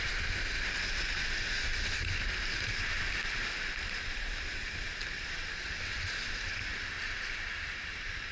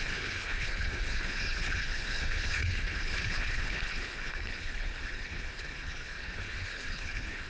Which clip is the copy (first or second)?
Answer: second